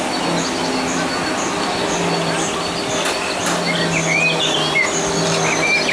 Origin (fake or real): real